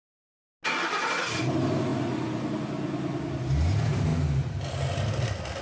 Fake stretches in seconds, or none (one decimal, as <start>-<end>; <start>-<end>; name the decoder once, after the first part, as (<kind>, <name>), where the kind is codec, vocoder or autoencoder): none